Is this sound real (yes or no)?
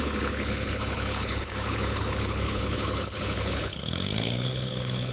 no